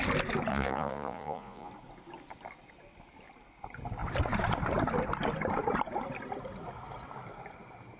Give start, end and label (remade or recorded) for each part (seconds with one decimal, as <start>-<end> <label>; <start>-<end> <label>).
0.0-0.5 recorded; 0.5-1.7 remade; 1.7-8.0 recorded